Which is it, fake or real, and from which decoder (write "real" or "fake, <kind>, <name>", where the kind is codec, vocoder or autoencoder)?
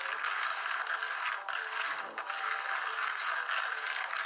real